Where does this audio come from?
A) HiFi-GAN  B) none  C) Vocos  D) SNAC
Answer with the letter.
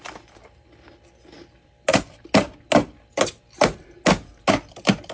B